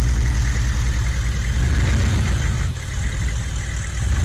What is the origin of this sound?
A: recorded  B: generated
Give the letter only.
A